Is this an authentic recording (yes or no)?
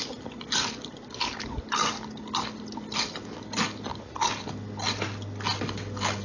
yes